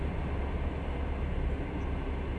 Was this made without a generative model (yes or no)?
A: yes